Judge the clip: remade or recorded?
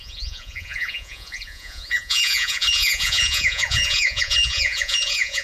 remade